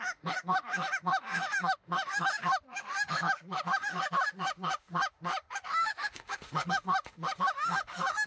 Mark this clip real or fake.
fake